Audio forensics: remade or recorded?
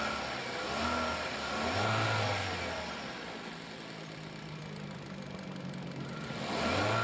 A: recorded